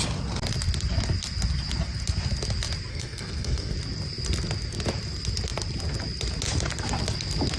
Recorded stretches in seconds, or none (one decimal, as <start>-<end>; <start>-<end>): 0.0-2.9; 3.7-7.6